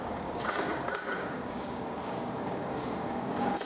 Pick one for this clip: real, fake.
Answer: fake